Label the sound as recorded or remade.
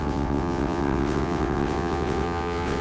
remade